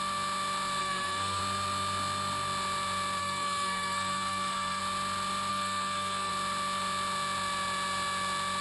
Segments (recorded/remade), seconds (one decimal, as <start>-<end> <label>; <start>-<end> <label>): 0.0-0.8 recorded; 0.8-1.4 remade; 1.4-3.2 recorded; 3.2-4.8 remade; 4.8-5.5 recorded; 5.5-6.3 remade; 6.3-8.6 recorded